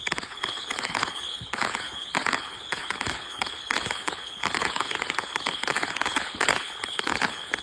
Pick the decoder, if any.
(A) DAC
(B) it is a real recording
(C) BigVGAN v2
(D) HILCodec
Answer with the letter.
D